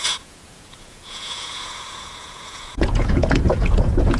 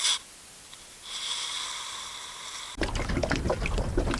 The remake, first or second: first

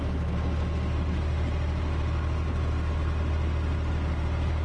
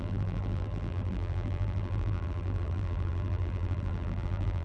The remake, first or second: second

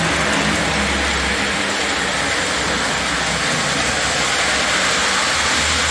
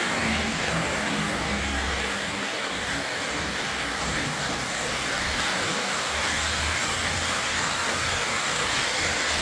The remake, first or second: second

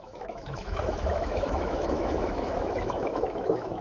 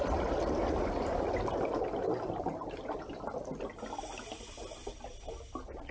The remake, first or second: first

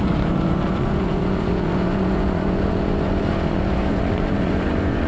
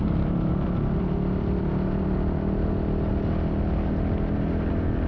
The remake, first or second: first